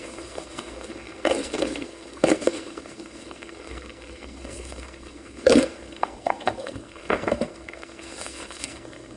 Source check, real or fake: fake